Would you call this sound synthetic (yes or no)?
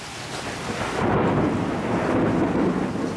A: no